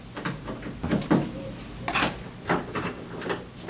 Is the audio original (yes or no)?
yes